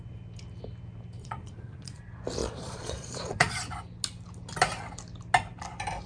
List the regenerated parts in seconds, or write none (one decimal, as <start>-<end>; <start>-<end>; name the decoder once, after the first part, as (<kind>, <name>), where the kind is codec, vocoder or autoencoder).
1.2-2.0 (vocoder, Vocos); 2.4-3.6